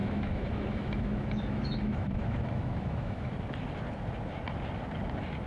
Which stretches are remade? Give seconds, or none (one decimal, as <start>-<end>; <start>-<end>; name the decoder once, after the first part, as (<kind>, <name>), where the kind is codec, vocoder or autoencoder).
0.0-3.3 (autoencoder, DAC-VAE)